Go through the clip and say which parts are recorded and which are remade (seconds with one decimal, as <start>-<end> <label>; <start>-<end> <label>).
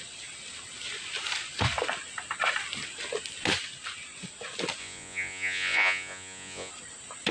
0.0-4.8 recorded; 4.8-6.7 remade; 6.7-7.3 recorded